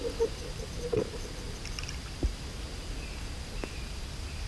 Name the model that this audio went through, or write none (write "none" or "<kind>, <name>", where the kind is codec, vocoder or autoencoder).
none